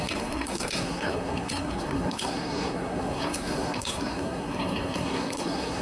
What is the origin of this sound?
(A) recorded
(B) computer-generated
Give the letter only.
B